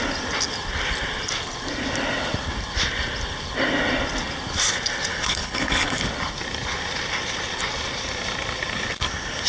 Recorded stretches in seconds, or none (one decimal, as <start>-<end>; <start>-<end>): 0.0-5.1; 6.0-9.5